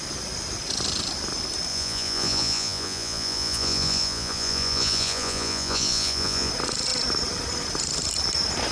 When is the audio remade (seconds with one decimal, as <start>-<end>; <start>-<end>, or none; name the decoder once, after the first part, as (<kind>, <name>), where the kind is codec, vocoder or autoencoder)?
1.7-6.5 (vocoder, Vocos)